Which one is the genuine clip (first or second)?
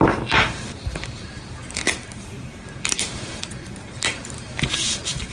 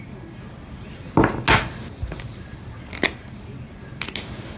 second